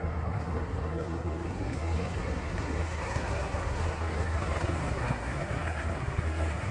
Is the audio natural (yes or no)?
no